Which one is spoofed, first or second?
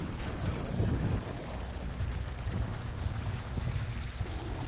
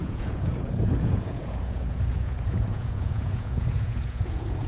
second